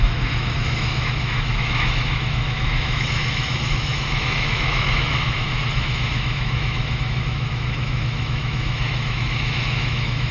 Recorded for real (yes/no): no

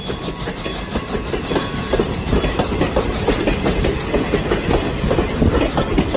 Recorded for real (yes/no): yes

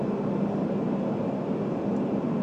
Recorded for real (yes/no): yes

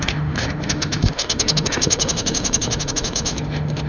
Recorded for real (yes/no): no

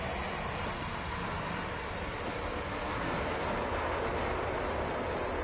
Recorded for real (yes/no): yes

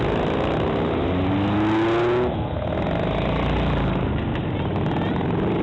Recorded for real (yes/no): yes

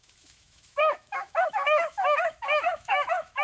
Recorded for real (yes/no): no